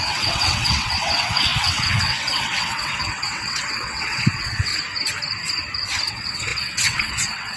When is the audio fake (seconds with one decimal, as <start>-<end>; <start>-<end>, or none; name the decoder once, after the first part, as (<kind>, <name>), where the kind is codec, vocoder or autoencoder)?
0.0-4.7 (vocoder, WaveNeXt); 6.1-7.6